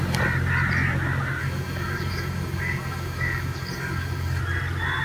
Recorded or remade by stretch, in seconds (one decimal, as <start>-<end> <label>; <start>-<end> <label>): 0.0-1.4 recorded; 1.4-4.4 remade; 4.4-5.0 recorded